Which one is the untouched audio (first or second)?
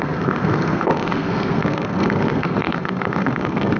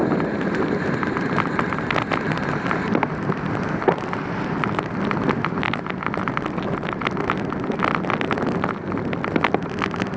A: second